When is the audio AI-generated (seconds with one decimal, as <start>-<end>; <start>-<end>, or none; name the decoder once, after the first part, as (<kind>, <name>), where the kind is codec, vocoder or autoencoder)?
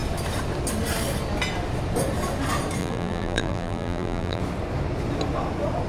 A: 2.8-4.4 (vocoder, BigVGAN v2)